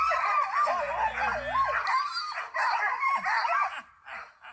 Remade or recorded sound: recorded